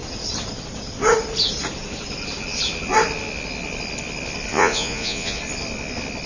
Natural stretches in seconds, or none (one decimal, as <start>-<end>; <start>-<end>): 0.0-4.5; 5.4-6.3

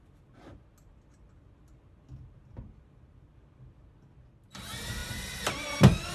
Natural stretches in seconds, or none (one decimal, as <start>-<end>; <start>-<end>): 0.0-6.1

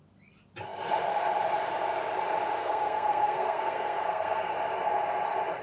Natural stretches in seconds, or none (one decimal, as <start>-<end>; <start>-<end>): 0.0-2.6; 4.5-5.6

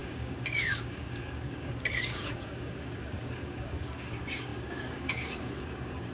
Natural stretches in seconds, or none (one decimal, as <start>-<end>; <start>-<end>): none

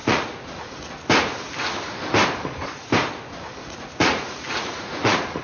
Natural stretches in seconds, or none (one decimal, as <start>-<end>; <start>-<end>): 0.9-3.6

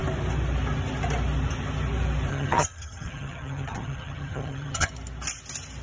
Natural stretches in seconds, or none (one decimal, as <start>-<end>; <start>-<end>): 0.0-2.3; 4.9-5.8